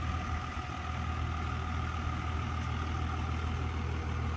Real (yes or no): yes